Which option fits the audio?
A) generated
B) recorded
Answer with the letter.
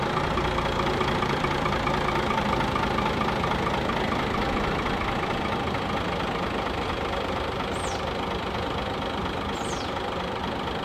B